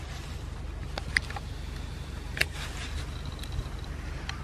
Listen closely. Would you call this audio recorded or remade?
recorded